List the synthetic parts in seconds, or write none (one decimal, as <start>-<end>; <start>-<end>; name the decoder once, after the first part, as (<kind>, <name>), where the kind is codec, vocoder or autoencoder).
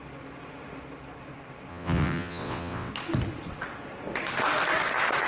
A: 1.7-2.9 (vocoder, WaveNeXt)